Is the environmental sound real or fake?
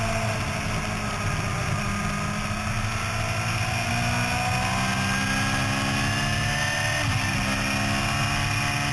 real